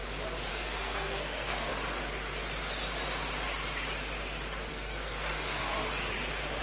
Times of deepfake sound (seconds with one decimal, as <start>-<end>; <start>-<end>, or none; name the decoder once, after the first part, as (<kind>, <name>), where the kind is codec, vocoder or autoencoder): 0.5-1.7 (codec, SNAC); 4.7-5.7